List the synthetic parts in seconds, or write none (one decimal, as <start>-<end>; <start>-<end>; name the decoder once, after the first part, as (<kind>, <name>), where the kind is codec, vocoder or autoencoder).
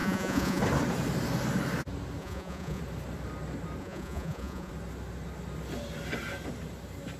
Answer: 0.0-0.6 (vocoder, Vocos); 2.2-2.8; 3.8-4.7